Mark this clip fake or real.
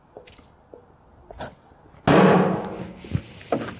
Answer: real